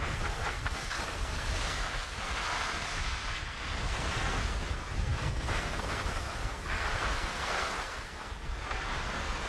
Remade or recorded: remade